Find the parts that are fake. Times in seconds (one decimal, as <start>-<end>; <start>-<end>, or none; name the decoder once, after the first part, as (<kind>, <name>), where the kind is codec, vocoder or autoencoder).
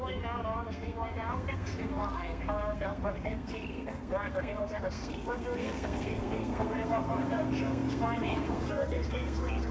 0.0-9.7 (codec, SNAC)